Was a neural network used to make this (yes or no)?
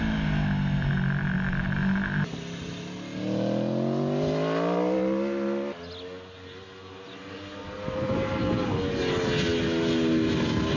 no